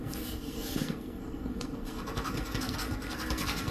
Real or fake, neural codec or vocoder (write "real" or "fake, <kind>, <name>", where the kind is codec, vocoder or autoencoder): fake, codec, SNAC